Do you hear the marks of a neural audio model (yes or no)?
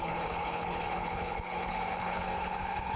yes